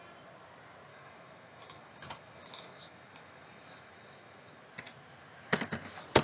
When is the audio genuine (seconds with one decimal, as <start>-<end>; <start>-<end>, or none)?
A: 0.0-0.9; 4.6-6.2